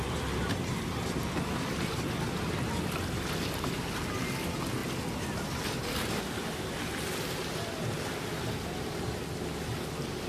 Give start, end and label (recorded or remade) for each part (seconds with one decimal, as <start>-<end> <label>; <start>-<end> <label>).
0.0-10.3 recorded